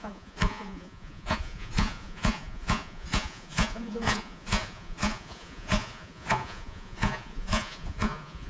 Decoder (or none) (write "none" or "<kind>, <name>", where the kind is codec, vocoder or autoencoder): vocoder, Vocos